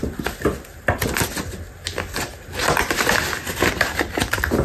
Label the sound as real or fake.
real